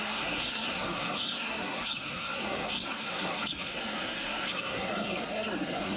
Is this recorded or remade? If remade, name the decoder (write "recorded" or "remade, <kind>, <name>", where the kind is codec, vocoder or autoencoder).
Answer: remade, codec, SNAC